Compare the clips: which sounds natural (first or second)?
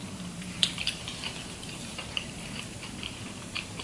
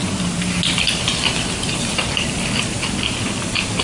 second